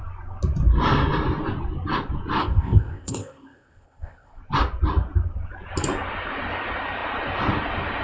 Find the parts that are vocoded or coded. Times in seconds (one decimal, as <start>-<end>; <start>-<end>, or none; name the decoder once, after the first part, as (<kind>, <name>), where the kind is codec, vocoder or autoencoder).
2.4-4.4 (codec, ZipCodec)